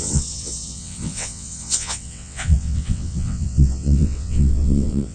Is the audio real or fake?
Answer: fake